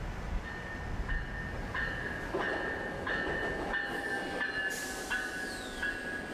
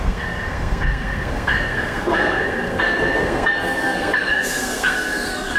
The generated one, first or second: second